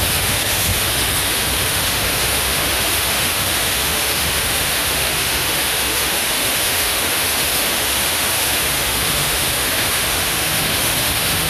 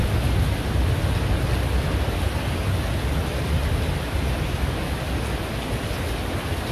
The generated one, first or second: first